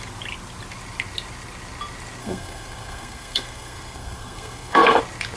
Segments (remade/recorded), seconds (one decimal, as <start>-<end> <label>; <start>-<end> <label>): 0.0-2.2 recorded; 2.2-5.0 remade; 5.0-5.4 recorded